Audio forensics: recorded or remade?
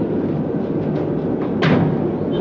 recorded